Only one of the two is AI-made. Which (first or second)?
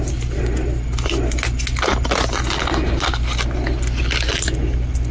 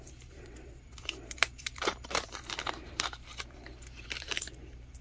second